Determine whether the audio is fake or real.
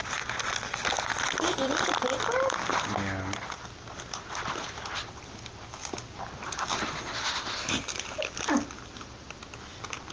real